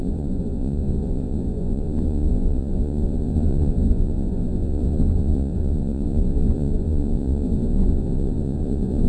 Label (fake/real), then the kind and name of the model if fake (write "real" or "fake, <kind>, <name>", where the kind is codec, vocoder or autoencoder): fake, vocoder, Vocos